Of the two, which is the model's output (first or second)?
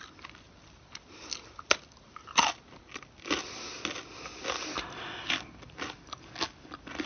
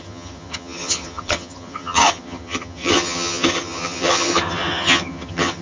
second